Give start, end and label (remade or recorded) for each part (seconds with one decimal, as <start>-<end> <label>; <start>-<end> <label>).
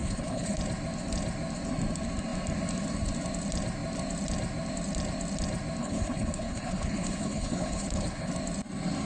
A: 0.0-0.6 remade; 0.6-5.8 recorded; 5.8-8.3 remade; 8.3-9.1 recorded